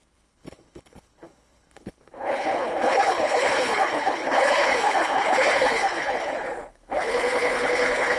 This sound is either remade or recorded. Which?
remade